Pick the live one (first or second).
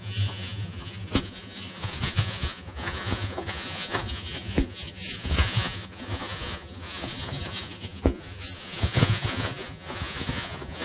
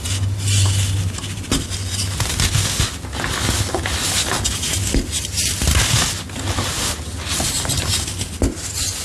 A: second